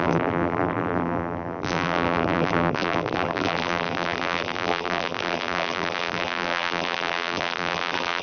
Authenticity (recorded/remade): remade